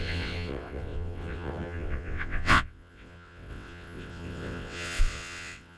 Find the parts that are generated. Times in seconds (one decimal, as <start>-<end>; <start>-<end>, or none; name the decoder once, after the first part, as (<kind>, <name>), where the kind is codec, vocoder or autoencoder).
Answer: 0.0-5.8 (vocoder, WaveNeXt)